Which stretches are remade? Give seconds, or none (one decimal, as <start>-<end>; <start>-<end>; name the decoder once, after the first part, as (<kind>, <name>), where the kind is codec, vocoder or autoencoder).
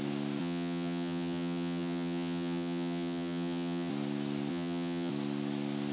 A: 0.4-3.9 (vocoder, HiFi-GAN); 4.5-5.1